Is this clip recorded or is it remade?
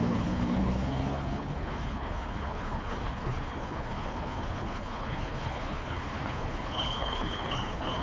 remade